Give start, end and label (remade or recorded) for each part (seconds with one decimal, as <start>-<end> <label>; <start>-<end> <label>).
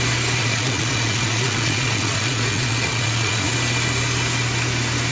0.0-0.4 recorded; 0.4-3.5 remade; 3.5-5.1 recorded